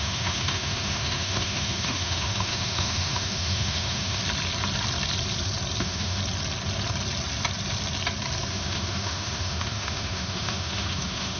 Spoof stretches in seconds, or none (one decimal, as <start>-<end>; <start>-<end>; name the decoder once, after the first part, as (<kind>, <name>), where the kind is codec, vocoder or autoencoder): 0.0-4.2 (autoencoder, DAC-VAE); 5.8-6.2; 8.5-11.4